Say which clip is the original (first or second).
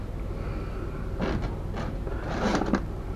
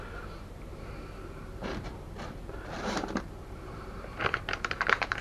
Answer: first